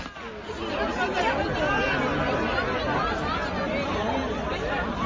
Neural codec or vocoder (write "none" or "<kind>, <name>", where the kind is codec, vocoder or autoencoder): none